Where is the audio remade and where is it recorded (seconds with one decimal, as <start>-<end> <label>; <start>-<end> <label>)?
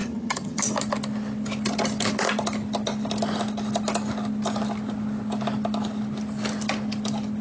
0.0-0.6 remade; 0.6-7.4 recorded